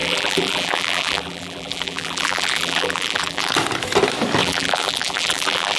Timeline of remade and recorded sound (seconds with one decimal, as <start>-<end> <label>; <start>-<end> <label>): 0.0-3.5 remade; 3.5-4.4 recorded; 4.4-5.8 remade